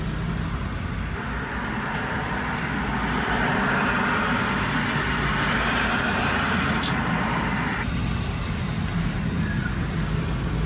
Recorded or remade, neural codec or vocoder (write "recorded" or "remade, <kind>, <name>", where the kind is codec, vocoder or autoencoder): recorded